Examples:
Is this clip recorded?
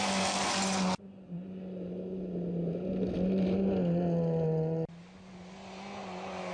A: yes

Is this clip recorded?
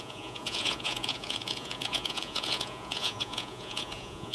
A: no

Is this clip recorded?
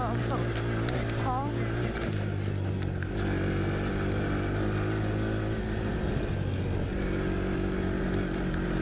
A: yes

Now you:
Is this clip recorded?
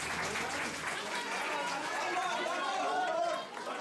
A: no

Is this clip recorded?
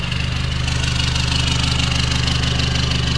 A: yes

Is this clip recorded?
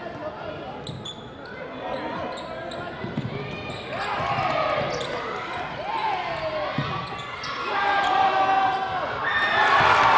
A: yes